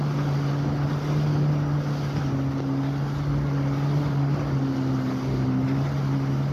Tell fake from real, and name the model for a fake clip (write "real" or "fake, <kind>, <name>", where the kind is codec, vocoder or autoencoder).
real